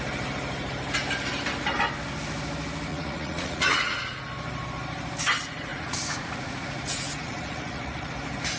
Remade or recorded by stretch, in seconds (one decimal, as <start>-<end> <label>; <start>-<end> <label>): 0.0-2.9 recorded; 2.9-4.2 remade; 4.2-5.7 recorded; 5.7-8.1 remade; 8.1-8.6 recorded